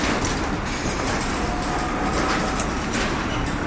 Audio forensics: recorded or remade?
recorded